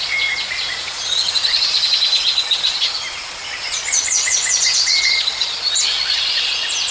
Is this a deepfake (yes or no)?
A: yes